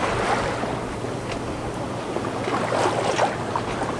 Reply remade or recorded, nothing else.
recorded